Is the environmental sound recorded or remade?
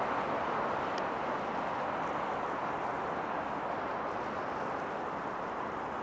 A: recorded